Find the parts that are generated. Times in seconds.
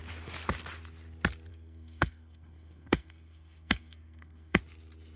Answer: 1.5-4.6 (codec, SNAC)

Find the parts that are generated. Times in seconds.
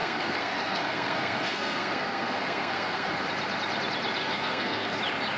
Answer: 0.0-3.2 (codec, SNAC); 4.2-5.0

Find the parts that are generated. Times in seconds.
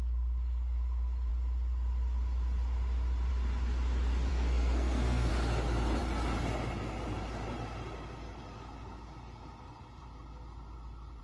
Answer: 4.3-5.3 (codec, SNAC)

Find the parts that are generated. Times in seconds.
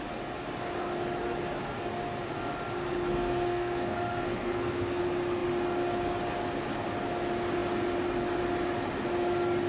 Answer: 3.1-5.0 (codec, SNAC)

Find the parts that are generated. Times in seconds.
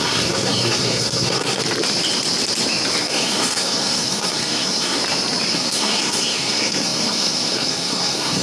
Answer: 0.0-1.6 (codec, SNAC); 3.0-5.0; 5.5-8.4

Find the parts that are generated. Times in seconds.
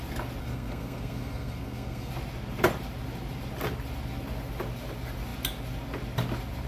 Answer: 0.4-2.1 (codec, SNAC)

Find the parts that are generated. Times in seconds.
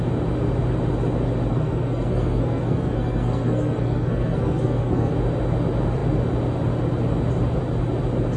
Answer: 1.5-5.1 (codec, SNAC)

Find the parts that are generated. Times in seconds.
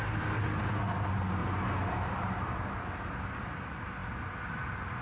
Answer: none